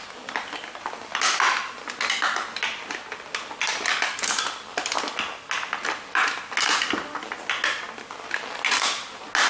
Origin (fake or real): real